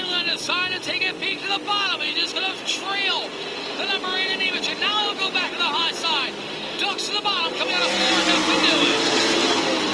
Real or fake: real